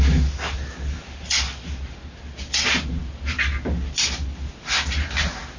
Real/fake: real